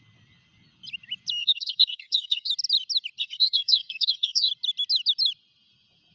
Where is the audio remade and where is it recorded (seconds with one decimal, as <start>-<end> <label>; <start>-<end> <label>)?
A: 0.0-1.4 recorded; 1.4-2.5 remade; 2.5-3.2 recorded; 3.2-4.5 remade; 4.5-6.1 recorded

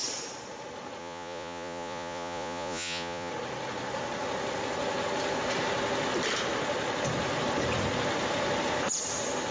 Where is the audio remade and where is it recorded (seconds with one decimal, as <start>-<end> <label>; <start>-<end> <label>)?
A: 0.0-1.0 recorded; 1.0-3.3 remade; 3.3-9.5 recorded

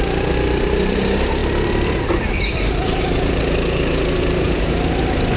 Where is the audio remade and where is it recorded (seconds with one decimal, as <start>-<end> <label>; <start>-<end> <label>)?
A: 0.0-1.4 recorded; 1.4-3.0 remade; 3.0-5.4 recorded

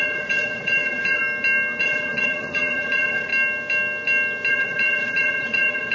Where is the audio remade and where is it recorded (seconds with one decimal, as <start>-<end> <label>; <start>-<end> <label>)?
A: 0.0-1.2 remade; 1.2-1.8 recorded; 1.8-3.3 remade; 3.3-4.5 recorded; 4.5-5.9 remade

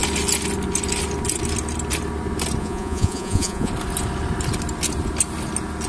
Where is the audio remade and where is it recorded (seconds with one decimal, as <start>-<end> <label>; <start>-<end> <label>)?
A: 0.0-2.6 recorded; 2.6-3.7 remade; 3.7-5.9 recorded